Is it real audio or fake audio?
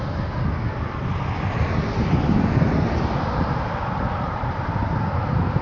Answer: real